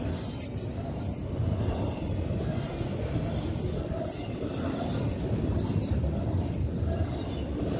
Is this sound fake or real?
fake